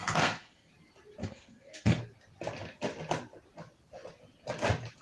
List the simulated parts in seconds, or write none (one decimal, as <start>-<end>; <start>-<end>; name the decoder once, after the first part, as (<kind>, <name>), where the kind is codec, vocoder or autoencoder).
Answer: 0.0-0.7 (codec, SNAC); 1.2-2.0